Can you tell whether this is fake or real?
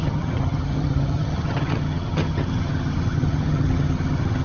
fake